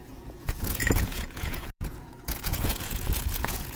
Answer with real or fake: fake